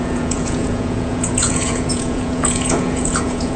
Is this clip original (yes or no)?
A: no